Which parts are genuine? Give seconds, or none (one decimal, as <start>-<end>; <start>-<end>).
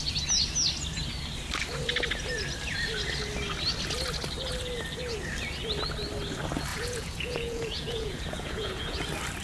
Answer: 0.0-6.7; 9.0-9.4